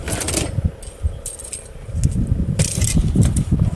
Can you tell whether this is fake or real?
real